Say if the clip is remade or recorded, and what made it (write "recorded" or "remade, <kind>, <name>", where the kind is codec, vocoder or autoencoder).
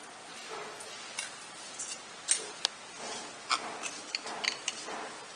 recorded